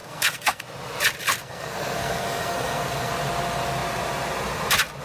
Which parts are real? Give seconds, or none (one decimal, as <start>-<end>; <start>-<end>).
0.6-1.3; 3.1-5.0